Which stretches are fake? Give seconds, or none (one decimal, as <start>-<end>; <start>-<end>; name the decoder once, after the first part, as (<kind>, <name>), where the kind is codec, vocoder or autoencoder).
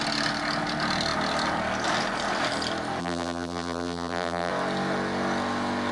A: 3.0-4.5 (vocoder, BigVGAN v2)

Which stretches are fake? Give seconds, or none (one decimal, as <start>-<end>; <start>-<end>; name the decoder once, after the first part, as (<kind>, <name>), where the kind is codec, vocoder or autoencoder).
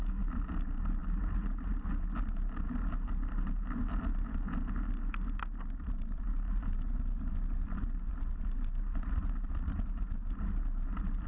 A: none